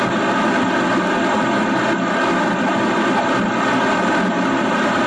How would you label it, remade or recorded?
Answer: recorded